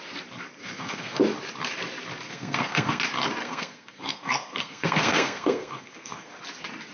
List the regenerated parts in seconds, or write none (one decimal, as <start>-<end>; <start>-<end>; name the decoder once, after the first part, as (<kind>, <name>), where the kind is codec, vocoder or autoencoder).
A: 0.6-1.2 (codec, SNAC); 2.3-3.0; 3.4-6.4